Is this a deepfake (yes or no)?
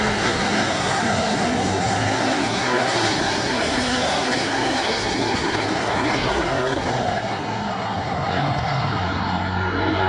yes